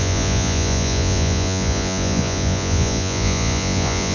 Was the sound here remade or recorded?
remade